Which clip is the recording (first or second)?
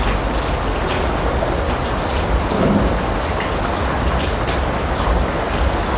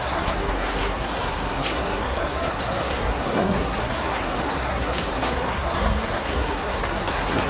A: first